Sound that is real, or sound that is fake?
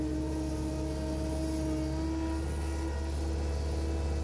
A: real